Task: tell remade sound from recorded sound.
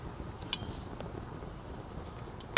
recorded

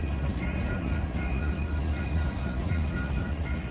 remade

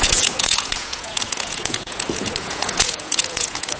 remade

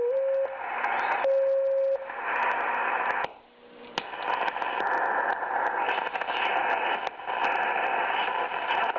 recorded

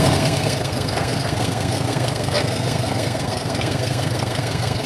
remade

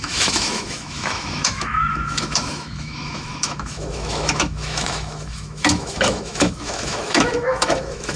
remade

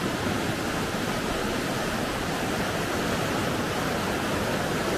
recorded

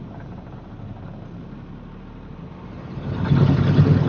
recorded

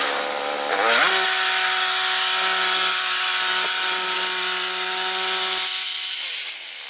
recorded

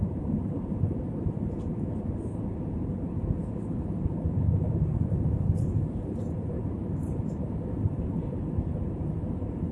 remade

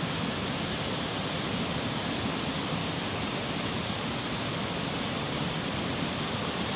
recorded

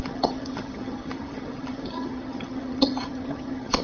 remade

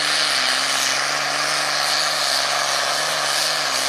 recorded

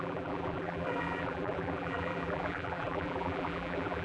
remade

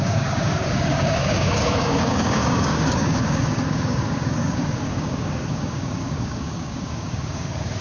remade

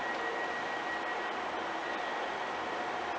recorded